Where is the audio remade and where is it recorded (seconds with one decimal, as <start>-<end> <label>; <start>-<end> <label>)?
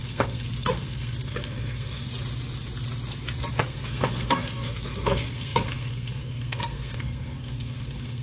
0.0-2.1 remade; 2.1-3.5 recorded; 3.5-8.2 remade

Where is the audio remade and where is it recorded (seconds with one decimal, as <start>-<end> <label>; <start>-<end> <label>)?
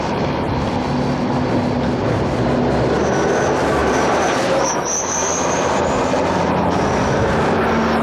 0.0-3.8 recorded; 3.8-7.3 remade; 7.3-8.0 recorded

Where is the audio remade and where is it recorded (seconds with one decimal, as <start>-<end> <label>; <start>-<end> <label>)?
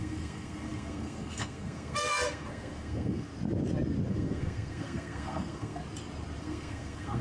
0.0-3.3 remade; 3.3-4.1 recorded; 4.1-5.8 remade; 5.8-6.4 recorded; 6.4-7.2 remade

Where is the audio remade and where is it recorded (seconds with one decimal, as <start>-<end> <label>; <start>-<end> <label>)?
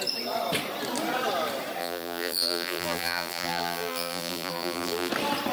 0.0-1.8 recorded; 1.8-5.1 remade; 5.1-5.5 recorded